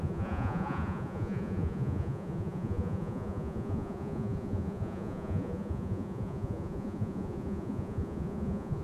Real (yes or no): no